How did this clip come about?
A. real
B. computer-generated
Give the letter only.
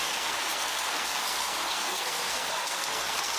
B